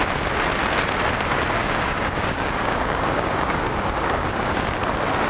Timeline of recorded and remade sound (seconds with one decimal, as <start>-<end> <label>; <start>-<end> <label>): 0.0-1.6 recorded; 1.6-4.8 remade; 4.8-5.3 recorded